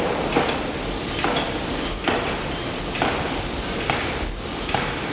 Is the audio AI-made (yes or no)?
yes